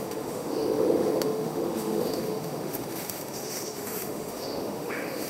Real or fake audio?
fake